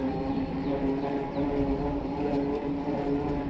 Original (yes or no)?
yes